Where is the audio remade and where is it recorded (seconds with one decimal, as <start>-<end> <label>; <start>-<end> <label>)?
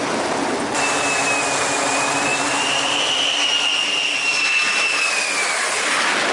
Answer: 0.0-6.3 recorded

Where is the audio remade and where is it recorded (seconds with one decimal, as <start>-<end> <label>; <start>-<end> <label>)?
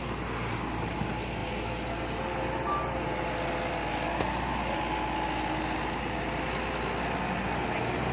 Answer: 0.0-8.1 recorded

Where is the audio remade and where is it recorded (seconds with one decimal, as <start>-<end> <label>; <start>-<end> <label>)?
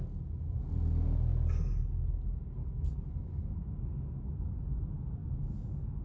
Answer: 0.0-2.6 recorded; 2.6-3.6 remade; 3.6-5.2 recorded; 5.2-6.0 remade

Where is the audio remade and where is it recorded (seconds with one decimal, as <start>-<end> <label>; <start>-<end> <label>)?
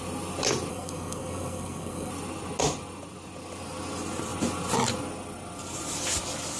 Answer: 0.0-0.7 recorded; 0.7-2.1 remade; 2.1-6.6 recorded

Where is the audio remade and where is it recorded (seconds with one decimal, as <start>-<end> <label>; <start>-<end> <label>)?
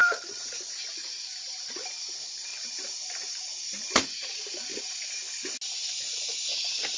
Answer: 0.0-1.6 remade; 1.6-7.0 recorded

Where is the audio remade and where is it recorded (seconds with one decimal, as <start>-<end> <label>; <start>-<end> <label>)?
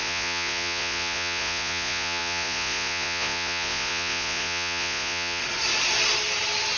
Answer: 0.0-5.4 remade; 5.4-6.8 recorded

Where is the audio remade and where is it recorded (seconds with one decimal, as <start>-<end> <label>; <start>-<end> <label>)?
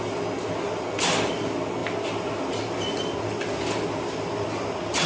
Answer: 0.0-5.1 recorded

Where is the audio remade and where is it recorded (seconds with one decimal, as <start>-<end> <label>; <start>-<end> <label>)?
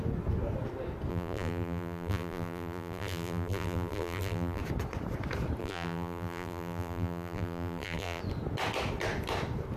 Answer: 0.0-1.1 recorded; 1.1-4.6 remade; 4.6-5.6 recorded; 5.6-8.2 remade; 8.2-9.8 recorded